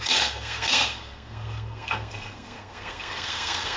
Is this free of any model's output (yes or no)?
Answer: no